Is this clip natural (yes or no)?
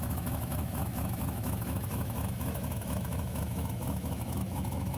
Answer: no